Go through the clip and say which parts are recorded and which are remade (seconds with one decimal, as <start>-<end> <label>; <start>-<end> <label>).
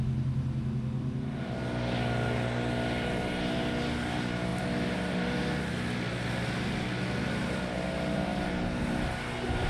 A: 0.0-9.7 recorded